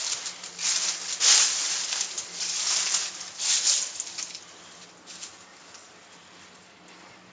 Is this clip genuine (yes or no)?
yes